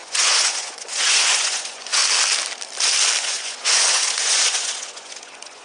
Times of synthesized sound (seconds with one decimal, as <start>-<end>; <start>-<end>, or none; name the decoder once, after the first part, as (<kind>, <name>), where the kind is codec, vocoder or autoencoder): 0.0-2.0 (vocoder, Vocos); 3.2-5.6